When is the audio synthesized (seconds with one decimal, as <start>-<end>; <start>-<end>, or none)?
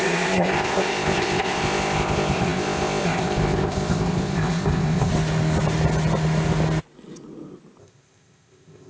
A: 0.0-5.1; 7.8-8.9